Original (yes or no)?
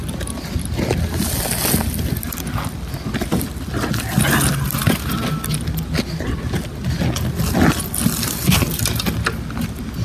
yes